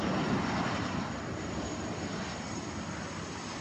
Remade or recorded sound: recorded